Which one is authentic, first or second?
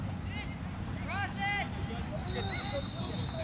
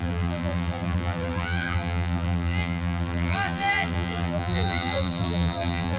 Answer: first